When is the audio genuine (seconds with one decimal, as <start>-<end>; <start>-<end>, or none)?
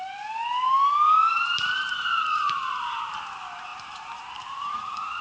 0.0-1.3; 3.0-3.7